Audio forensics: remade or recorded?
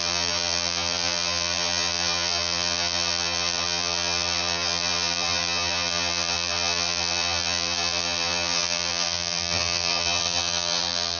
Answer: remade